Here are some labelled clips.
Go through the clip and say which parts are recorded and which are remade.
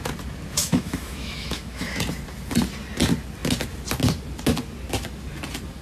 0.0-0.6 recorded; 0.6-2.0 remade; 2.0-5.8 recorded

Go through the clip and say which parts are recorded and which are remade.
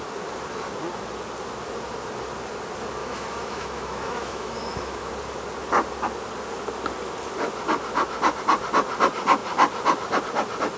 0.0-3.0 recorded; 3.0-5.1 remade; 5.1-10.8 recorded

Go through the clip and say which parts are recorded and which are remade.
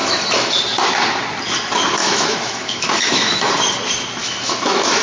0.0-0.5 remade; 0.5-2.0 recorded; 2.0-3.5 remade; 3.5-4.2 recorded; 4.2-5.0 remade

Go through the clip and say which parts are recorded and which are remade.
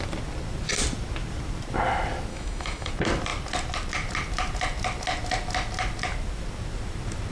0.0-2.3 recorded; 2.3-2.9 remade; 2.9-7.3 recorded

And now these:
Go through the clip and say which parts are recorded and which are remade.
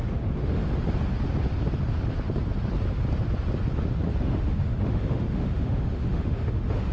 0.0-0.6 remade; 0.6-4.2 recorded; 4.2-6.9 remade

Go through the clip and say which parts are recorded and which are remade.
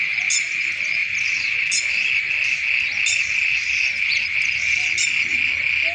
0.0-5.9 recorded